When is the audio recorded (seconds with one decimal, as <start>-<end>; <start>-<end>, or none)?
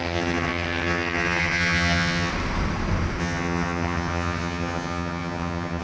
2.3-3.2